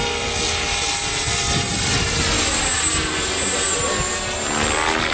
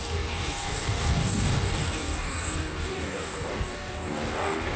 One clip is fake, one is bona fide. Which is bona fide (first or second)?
first